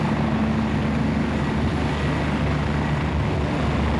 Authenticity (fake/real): real